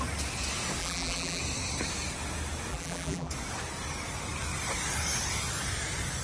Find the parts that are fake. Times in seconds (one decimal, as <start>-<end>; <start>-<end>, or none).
0.8-1.4; 2.7-3.3